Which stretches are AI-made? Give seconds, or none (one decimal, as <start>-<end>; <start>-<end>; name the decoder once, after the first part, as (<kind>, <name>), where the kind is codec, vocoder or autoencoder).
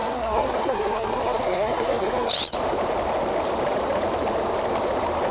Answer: 0.0-2.3 (codec, SNAC)